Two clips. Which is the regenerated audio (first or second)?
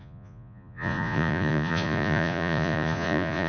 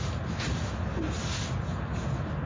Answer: first